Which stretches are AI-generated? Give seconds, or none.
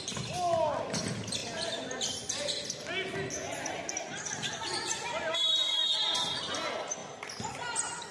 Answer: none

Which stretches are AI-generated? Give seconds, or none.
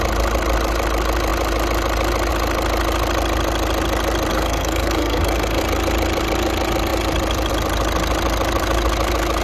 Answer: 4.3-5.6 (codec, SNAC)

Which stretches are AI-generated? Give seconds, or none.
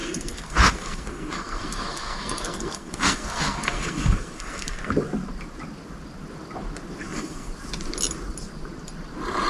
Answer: 0.0-4.9 (codec, SNAC); 7.0-7.5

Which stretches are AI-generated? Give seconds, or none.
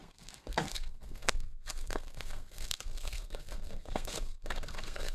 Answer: 0.0-5.1 (codec, SNAC)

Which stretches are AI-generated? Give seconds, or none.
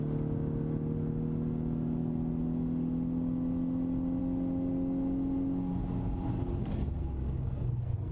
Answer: 6.6-8.1 (codec, SNAC)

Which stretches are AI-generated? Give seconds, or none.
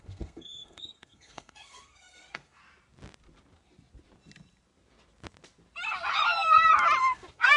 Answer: 0.0-2.6 (codec, SNAC); 7.0-7.6